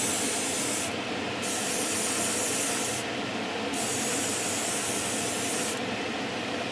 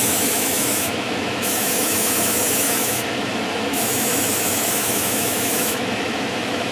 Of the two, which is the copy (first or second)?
second